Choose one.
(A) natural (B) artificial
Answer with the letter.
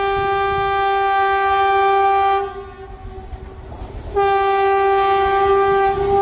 A